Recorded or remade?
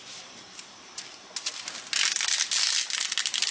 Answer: recorded